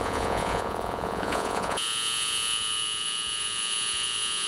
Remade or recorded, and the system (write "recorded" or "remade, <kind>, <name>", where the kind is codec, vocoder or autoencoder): remade, vocoder, Vocos